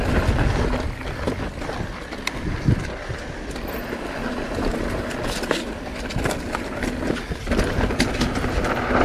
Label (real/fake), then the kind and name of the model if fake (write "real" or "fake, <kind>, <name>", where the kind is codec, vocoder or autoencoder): real